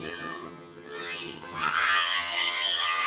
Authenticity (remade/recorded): remade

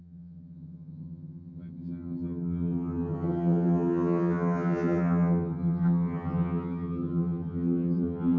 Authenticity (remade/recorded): remade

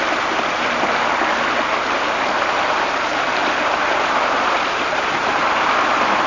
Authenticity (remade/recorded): recorded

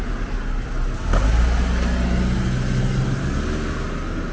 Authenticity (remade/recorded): recorded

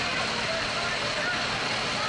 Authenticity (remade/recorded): recorded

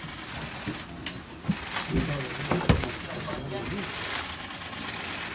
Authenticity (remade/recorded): recorded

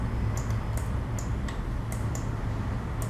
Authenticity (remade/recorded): recorded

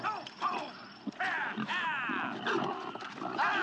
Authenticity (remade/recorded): recorded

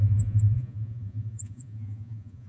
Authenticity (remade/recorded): remade